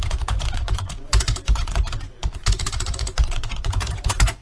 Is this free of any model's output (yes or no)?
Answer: no